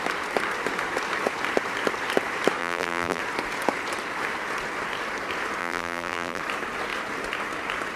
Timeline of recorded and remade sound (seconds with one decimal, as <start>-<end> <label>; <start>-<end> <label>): 0.0-2.6 recorded; 2.6-3.2 remade; 3.2-5.6 recorded; 5.6-6.4 remade; 6.4-8.0 recorded

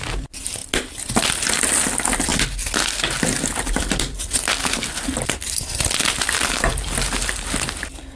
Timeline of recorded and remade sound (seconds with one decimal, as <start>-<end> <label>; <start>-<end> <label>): 0.0-8.2 recorded

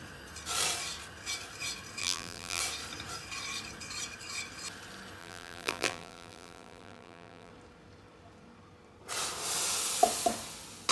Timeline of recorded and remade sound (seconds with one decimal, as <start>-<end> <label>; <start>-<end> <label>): 0.0-2.0 recorded; 2.0-2.6 remade; 2.6-5.2 recorded; 5.2-7.5 remade; 7.5-10.9 recorded

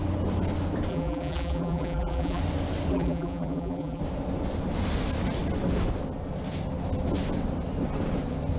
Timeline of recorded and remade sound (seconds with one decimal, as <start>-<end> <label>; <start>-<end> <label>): 0.0-0.9 recorded; 0.9-2.4 remade; 2.4-2.9 recorded; 2.9-4.0 remade; 4.0-8.6 recorded

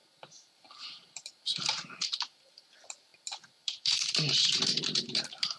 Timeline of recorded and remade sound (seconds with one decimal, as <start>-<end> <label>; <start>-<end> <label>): 0.0-5.6 remade

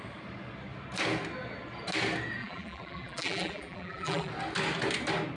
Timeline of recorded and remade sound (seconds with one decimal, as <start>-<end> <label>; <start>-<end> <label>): 0.0-2.4 recorded; 2.4-4.3 remade; 4.3-5.4 recorded

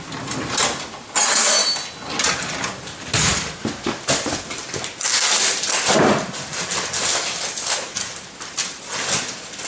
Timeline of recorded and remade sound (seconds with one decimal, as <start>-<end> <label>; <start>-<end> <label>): 0.0-9.7 recorded

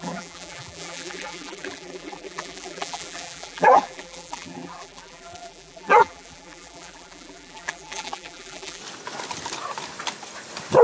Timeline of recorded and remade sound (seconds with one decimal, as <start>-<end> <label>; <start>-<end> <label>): 0.0-8.8 remade; 8.8-10.8 recorded